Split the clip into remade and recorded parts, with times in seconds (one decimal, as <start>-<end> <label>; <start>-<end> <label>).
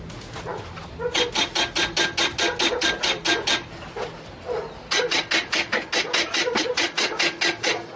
0.0-8.0 recorded